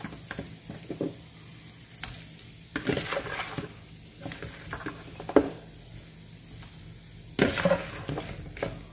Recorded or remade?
recorded